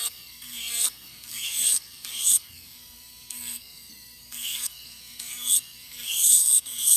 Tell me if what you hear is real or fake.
fake